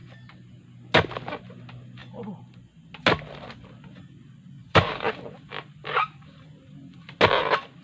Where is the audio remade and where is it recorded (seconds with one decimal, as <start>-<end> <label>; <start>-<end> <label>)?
0.0-4.6 recorded; 4.6-5.5 remade; 5.5-7.8 recorded